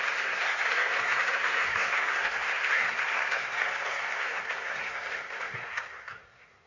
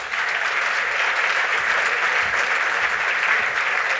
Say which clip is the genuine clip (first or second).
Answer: second